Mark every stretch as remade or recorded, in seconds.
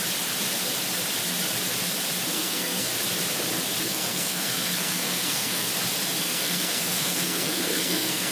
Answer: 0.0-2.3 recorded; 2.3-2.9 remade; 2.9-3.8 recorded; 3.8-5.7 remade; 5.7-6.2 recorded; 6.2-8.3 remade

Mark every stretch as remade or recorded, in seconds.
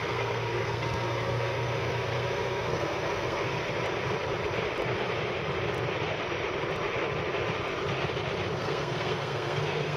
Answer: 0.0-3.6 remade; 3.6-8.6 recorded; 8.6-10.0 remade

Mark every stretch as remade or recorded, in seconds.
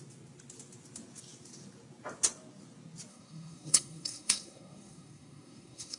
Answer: 0.0-3.1 recorded; 3.1-6.0 remade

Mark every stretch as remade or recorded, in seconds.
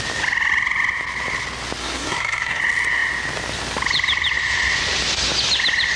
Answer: 0.0-1.8 recorded; 1.8-2.6 remade; 2.6-6.0 recorded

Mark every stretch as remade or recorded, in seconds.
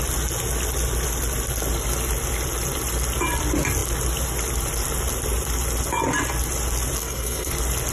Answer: 0.0-7.0 recorded; 7.0-7.5 remade; 7.5-7.9 recorded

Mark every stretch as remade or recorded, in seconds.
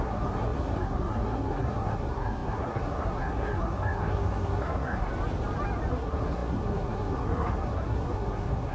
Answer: 0.0-5.1 remade; 5.1-5.9 recorded; 5.9-8.7 remade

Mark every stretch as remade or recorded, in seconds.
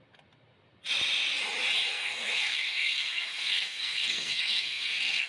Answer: 0.0-1.9 recorded; 1.9-5.3 remade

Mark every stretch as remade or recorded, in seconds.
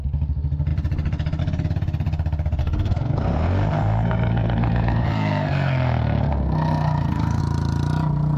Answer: 0.0-2.6 recorded; 2.6-7.4 remade; 7.4-8.4 recorded